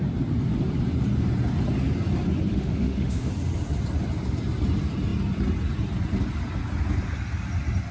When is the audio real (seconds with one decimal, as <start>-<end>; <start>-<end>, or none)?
0.0-2.5; 3.3-7.9